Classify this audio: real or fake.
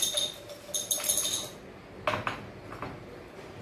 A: real